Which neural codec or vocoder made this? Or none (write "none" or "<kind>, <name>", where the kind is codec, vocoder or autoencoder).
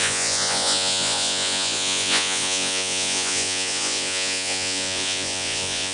vocoder, Vocos